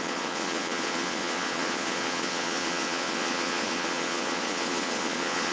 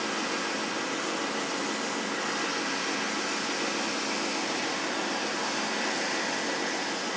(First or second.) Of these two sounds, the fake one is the first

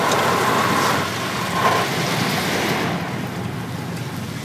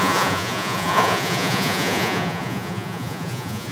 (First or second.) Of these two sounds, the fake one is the second